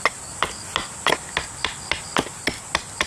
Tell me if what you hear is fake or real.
real